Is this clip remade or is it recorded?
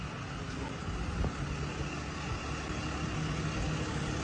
recorded